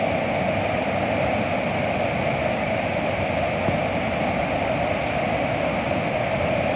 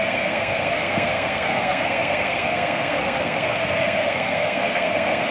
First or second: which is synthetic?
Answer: second